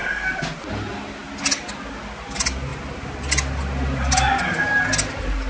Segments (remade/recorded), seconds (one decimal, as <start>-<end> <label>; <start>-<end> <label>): 0.0-5.5 recorded